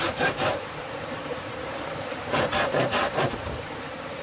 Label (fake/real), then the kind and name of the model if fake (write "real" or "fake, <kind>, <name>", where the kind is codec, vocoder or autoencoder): fake, vocoder, BigVGAN v2